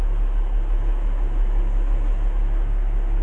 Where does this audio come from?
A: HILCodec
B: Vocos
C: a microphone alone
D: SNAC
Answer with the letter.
C